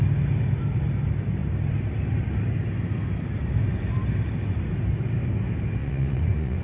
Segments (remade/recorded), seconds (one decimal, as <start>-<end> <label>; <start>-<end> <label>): 0.0-5.8 recorded; 5.8-6.6 remade